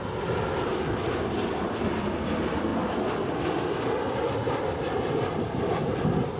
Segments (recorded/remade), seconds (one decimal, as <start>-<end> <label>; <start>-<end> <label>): 0.0-6.4 recorded